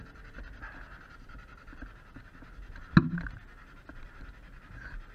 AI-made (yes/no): no